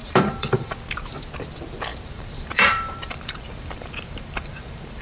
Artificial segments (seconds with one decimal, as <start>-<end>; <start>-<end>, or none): 0.0-0.7; 1.9-5.0

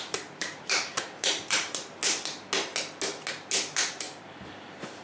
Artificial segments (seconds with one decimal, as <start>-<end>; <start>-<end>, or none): 0.0-2.0; 4.4-5.0

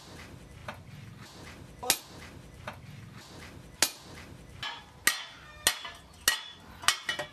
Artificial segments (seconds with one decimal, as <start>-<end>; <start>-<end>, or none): none

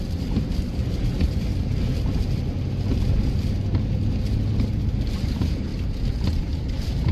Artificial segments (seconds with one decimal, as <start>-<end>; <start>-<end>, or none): 0.0-1.5; 5.1-5.7; 6.4-7.1

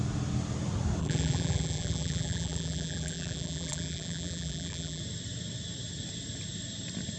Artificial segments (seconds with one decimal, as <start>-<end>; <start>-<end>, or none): 1.0-5.0

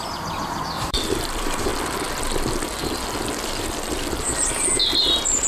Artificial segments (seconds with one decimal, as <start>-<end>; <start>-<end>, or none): 0.0-1.7; 5.0-5.5

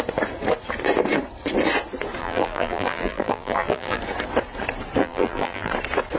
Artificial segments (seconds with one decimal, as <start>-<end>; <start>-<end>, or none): 2.2-4.0; 5.0-5.7

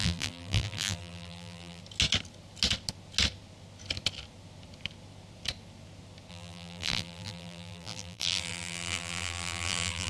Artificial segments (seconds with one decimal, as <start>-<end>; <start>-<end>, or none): 0.0-1.8; 6.3-10.1